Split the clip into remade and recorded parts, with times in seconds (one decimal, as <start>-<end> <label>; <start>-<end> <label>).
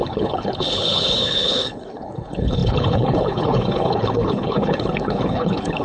0.0-5.8 remade